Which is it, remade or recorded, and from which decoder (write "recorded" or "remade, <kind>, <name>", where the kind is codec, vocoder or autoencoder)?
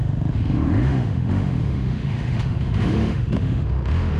remade, autoencoder, DAC-VAE